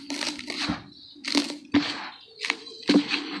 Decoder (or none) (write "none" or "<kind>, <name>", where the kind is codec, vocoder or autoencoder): none